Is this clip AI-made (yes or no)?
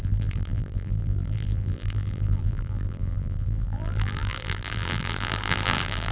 yes